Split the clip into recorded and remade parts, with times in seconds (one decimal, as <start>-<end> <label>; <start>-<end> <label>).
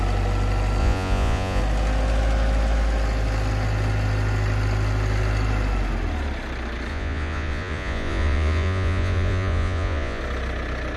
0.0-0.8 recorded; 0.8-1.6 remade; 1.6-6.9 recorded; 6.9-10.2 remade; 10.2-11.0 recorded